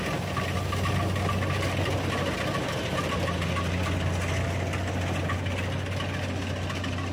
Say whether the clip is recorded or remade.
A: recorded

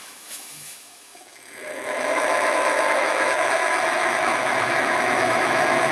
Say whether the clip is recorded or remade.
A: remade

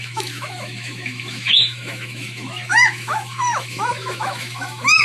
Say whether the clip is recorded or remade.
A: remade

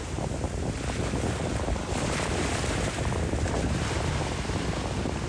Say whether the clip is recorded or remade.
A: recorded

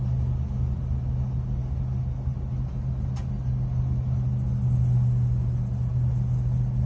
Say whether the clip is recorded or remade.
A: recorded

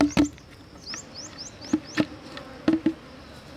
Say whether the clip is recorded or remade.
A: recorded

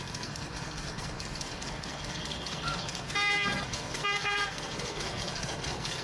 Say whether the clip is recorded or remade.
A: remade